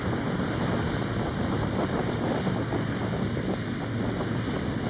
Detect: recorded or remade recorded